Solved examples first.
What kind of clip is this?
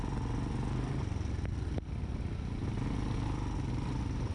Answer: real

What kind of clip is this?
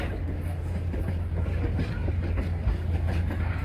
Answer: fake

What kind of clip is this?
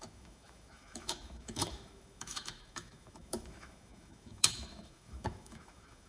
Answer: fake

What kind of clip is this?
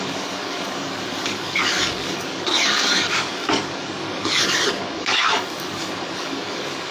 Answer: fake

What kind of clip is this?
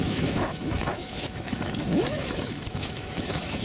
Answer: fake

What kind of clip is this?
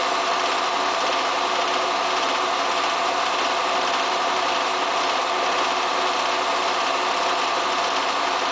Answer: real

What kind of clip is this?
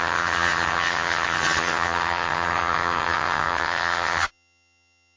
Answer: fake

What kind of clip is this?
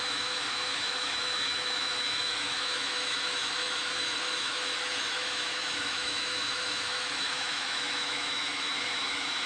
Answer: fake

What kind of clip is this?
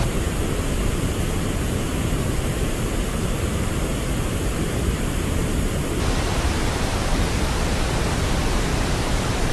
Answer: fake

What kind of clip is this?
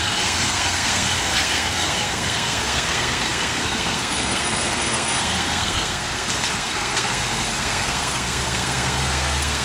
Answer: fake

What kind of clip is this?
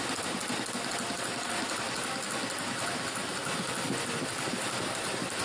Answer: real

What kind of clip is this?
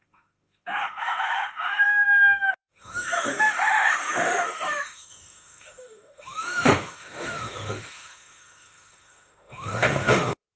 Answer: fake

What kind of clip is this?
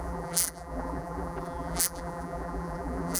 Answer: fake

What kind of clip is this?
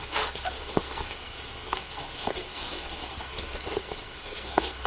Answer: fake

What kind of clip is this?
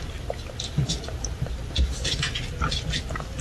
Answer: real